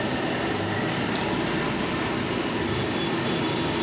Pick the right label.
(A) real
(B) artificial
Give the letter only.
A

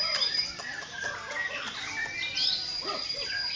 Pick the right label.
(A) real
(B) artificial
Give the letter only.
A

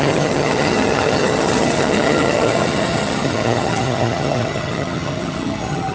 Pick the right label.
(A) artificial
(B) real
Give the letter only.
A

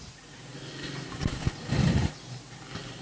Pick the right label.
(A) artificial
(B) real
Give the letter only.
B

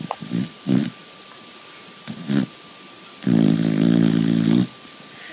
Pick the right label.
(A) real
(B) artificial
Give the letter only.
A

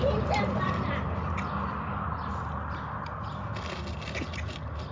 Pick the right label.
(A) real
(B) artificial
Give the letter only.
A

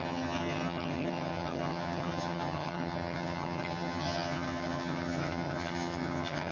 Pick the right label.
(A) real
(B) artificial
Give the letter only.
B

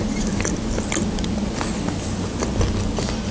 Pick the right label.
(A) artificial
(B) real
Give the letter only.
B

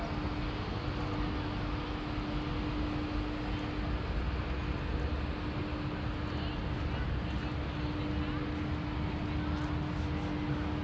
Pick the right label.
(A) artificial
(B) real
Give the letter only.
B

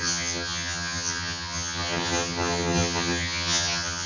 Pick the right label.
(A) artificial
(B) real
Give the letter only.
A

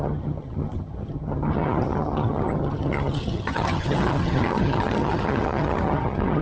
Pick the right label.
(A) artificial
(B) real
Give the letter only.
A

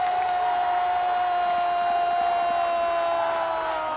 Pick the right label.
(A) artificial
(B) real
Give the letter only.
B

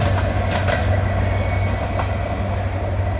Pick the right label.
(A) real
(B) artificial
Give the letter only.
A